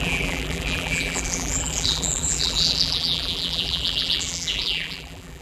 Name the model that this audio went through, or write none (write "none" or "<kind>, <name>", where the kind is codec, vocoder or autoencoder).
vocoder, BigVGAN v2